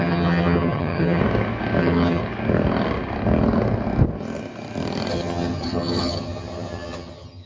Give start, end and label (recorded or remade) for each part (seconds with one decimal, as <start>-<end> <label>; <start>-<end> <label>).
0.0-1.2 remade; 1.2-1.8 recorded; 1.8-2.2 remade; 2.2-5.1 recorded; 5.1-7.5 remade